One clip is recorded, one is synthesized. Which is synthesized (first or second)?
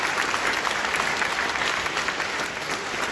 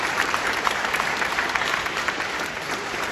second